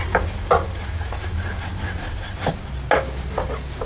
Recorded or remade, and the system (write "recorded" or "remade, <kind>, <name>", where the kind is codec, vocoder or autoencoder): recorded